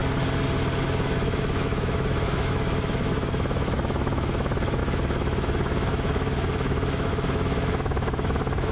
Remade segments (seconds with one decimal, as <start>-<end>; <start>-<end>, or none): 0.9-8.7